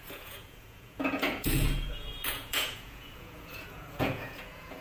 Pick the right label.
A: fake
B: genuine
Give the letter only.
A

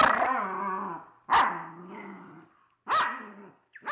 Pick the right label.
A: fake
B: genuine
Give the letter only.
B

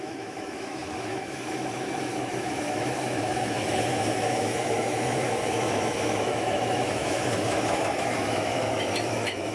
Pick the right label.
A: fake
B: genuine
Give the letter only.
A